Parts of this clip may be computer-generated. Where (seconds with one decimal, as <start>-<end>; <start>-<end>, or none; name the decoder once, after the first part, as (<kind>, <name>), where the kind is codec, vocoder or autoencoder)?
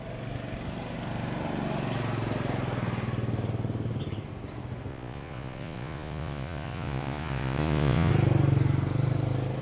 4.9-8.1 (vocoder, Vocos)